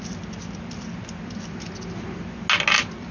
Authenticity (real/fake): real